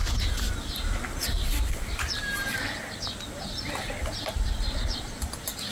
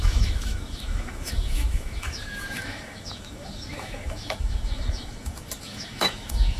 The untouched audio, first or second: first